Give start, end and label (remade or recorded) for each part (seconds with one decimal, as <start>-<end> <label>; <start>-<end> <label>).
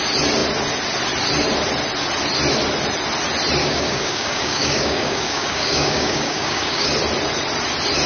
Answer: 0.0-3.6 recorded; 3.6-6.9 remade; 6.9-8.1 recorded